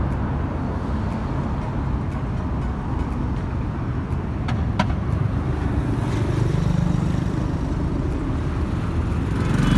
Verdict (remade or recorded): recorded